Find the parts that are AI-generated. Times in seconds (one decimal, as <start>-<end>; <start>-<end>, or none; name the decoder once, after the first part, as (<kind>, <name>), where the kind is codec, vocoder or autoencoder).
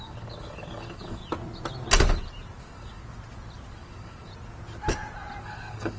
0.0-1.2 (codec, DAC); 2.6-3.0; 3.7-4.3; 5.4-6.0